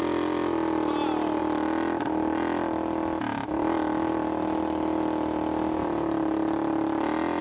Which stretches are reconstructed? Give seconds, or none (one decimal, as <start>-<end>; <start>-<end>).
none

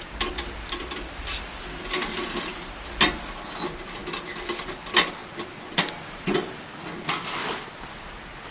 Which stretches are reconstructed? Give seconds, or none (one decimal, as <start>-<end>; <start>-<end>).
none

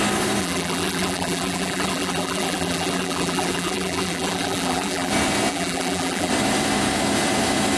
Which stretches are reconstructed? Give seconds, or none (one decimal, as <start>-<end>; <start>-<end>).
0.4-5.1; 5.5-6.3

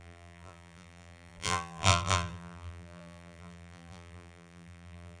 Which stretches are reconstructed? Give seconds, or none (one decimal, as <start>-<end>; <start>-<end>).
0.0-5.2

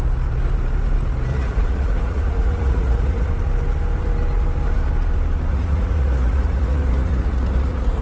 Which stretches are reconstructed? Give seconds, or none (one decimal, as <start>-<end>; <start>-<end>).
1.3-3.3; 5.5-8.0